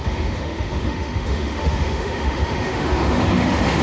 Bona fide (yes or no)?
no